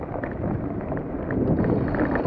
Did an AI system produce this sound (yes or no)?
no